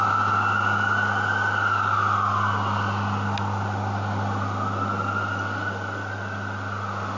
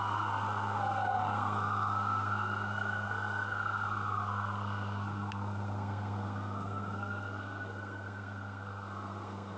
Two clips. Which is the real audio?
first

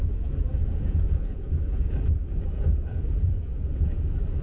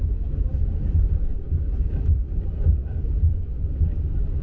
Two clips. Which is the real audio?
second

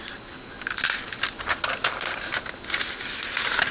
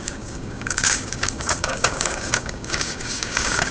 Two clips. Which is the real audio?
first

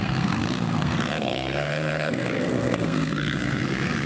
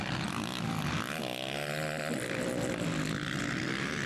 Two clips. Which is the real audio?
second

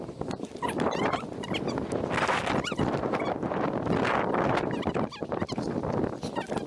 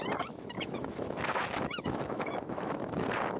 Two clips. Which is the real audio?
first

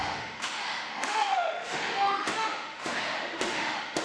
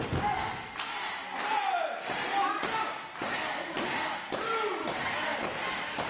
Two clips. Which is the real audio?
second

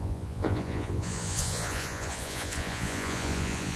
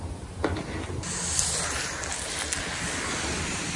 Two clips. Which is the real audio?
second